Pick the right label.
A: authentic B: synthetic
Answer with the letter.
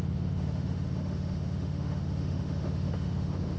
B